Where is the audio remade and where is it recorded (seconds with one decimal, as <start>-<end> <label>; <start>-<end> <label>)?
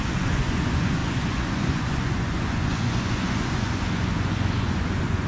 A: 0.0-5.3 remade